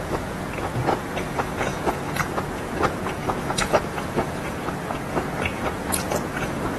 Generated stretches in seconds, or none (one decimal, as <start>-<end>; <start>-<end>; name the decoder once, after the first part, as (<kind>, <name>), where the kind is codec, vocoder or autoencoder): 0.0-6.8 (vocoder, Vocos)